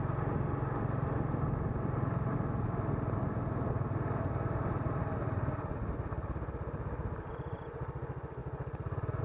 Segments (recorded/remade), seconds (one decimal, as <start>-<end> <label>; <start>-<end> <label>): 0.0-9.2 recorded